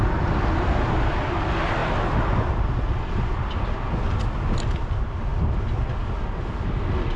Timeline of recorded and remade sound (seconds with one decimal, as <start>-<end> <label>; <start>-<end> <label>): 0.0-7.2 recorded